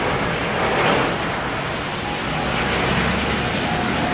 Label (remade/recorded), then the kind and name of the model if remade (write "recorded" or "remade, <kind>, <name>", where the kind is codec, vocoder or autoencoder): recorded